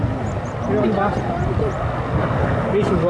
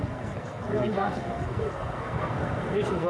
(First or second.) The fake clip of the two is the second